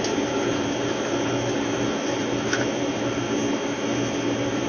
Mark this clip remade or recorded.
recorded